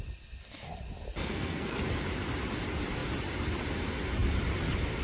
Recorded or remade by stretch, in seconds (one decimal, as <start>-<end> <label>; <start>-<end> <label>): 0.0-1.2 recorded; 1.2-1.8 remade; 1.8-5.0 recorded